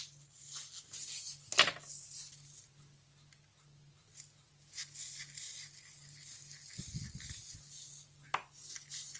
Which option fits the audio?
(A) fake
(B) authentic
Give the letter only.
B